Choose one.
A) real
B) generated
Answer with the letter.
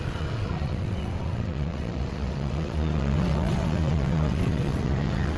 B